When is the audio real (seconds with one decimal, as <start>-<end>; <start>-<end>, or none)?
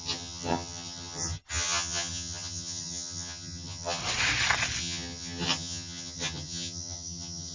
4.0-4.8